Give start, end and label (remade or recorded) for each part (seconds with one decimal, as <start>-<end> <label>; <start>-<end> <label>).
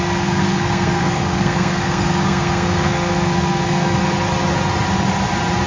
0.0-4.0 remade; 4.0-5.7 recorded